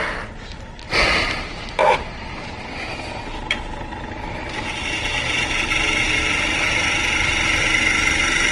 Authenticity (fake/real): real